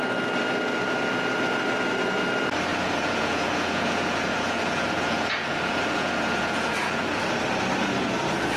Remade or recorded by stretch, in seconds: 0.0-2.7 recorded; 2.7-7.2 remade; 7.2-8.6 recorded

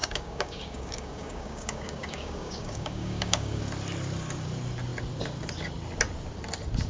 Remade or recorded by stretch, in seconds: 0.0-3.6 remade; 3.6-6.9 recorded

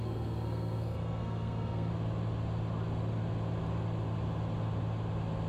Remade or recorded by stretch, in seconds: 0.0-1.9 remade; 1.9-5.5 recorded

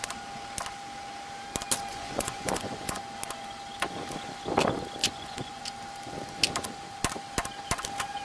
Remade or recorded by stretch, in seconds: 0.0-1.9 recorded; 1.9-3.0 remade; 3.0-5.0 recorded; 5.0-5.6 remade; 5.6-8.2 recorded

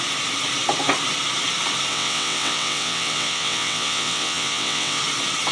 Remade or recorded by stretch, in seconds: 0.0-1.9 recorded; 1.9-5.0 remade; 5.0-5.5 recorded

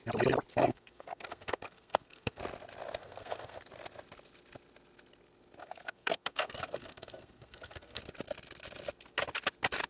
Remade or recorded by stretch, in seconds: 0.0-0.5 recorded; 0.5-2.4 remade; 2.4-3.0 recorded; 3.0-3.6 remade; 3.6-5.6 recorded; 5.6-8.0 remade; 8.0-9.9 recorded

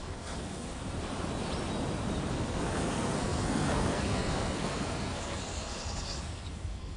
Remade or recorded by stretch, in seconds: 0.0-0.8 remade; 0.8-2.3 recorded; 2.3-7.0 remade

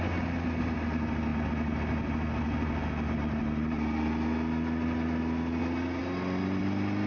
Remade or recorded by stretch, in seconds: 0.0-7.1 recorded